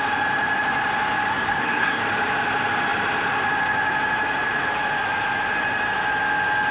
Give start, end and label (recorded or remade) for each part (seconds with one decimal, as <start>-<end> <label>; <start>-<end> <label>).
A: 0.0-1.3 recorded; 1.3-2.0 remade; 2.0-6.7 recorded